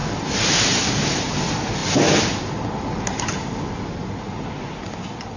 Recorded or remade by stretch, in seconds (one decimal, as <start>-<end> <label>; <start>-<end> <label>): 0.0-5.4 recorded